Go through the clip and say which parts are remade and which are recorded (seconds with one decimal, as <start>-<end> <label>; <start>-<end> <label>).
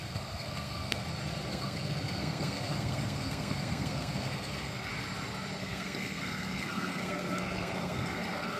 0.0-1.0 remade; 1.0-1.5 recorded; 1.5-4.9 remade; 4.9-5.6 recorded; 5.6-8.6 remade